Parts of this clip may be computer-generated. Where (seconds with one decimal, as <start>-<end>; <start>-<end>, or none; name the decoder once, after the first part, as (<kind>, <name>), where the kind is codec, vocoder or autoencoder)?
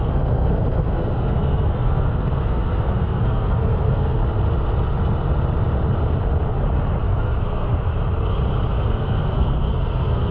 0.0-4.2 (codec, SNAC); 7.0-7.9; 8.7-10.3